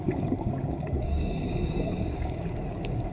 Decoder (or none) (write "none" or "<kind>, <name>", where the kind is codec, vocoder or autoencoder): codec, DAC